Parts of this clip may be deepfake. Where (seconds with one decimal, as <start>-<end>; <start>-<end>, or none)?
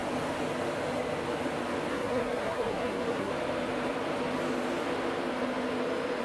1.9-3.3